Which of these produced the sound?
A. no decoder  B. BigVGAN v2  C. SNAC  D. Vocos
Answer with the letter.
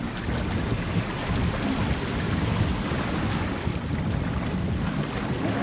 A